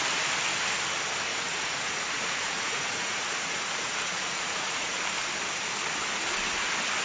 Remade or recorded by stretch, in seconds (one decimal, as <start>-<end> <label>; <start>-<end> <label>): 0.0-1.3 recorded; 1.3-4.9 remade; 4.9-7.0 recorded